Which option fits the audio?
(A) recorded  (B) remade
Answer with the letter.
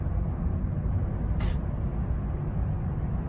A